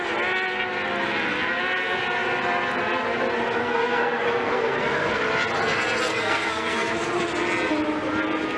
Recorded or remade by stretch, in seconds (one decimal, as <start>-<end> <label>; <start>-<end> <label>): 0.0-3.6 recorded; 3.6-5.2 remade; 5.2-6.1 recorded; 6.1-6.9 remade; 6.9-8.6 recorded